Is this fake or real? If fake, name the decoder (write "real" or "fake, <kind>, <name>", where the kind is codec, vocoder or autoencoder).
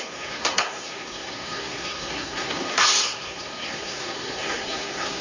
fake, codec, SNAC